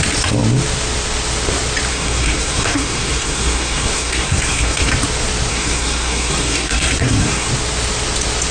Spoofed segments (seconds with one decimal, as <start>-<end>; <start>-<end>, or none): 1.9-4.9; 5.5-7.5